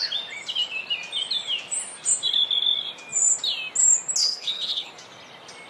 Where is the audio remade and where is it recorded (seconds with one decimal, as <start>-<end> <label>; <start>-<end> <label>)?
0.0-4.2 recorded; 4.2-4.9 remade; 4.9-5.7 recorded